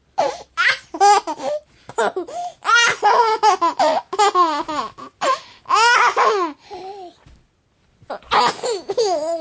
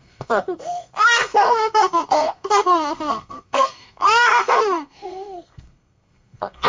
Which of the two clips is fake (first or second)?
second